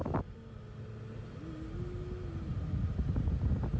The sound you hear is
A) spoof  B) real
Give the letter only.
B